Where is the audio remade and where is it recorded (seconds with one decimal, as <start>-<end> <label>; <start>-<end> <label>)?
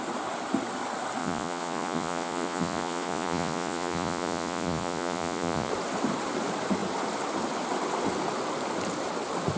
0.0-1.2 recorded; 1.2-5.7 remade; 5.7-9.6 recorded